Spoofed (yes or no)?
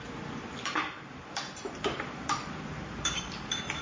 yes